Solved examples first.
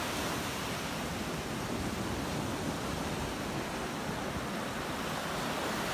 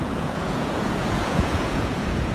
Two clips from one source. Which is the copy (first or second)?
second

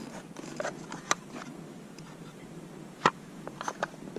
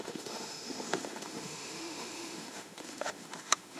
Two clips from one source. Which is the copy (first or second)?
second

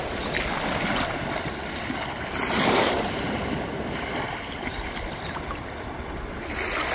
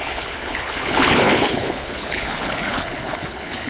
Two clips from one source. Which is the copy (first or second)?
second